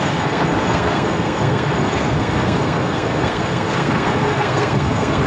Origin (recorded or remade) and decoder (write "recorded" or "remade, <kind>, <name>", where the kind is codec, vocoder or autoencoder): remade, codec, SNAC